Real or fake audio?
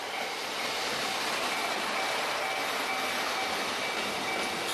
real